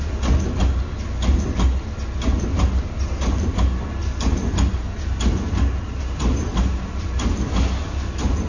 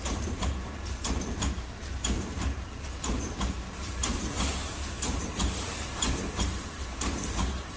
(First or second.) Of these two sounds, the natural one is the first